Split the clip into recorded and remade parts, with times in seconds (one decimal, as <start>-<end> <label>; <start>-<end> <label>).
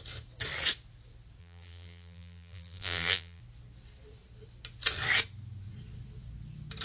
0.0-1.4 recorded; 1.4-3.4 remade; 3.4-6.8 recorded